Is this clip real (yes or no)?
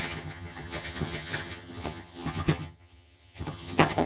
no